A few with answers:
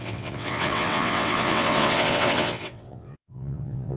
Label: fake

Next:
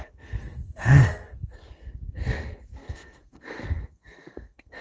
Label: fake